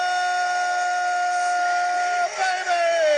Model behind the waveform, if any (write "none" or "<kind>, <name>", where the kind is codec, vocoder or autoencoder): none